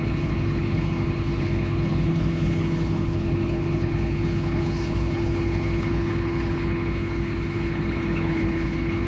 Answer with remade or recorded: remade